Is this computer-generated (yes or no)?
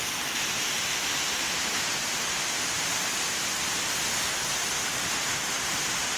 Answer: yes